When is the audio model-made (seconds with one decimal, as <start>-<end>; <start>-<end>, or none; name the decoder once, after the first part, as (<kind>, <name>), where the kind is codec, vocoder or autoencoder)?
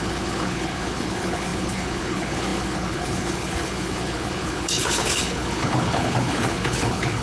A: 0.0-7.2 (codec, HILCodec)